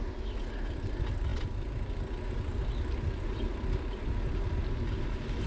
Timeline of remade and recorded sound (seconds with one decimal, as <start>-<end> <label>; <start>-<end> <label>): 0.0-5.5 recorded